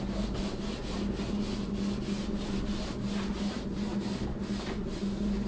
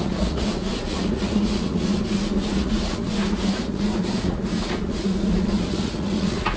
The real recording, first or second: first